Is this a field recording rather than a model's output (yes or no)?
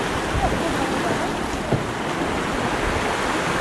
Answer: yes